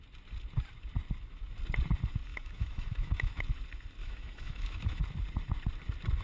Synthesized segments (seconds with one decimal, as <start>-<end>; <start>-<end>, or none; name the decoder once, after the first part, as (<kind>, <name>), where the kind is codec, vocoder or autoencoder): 2.3-3.4 (autoencoder, DAC-VAE); 4.0-5.0